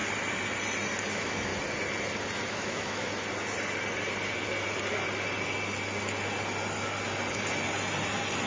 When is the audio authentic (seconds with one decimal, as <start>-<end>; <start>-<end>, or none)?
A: 0.0-1.1; 1.5-2.5; 3.1-8.5